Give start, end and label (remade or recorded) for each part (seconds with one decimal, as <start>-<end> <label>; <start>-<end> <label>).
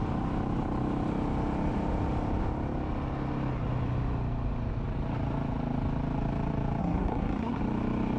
0.0-6.8 recorded; 6.8-7.6 remade; 7.6-8.2 recorded